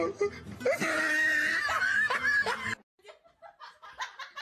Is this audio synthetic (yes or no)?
no